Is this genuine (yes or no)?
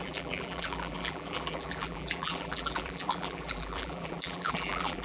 no